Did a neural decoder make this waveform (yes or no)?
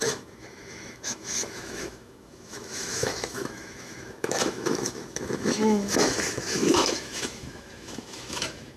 yes